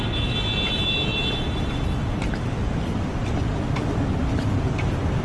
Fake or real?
real